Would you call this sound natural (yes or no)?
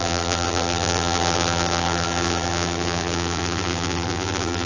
no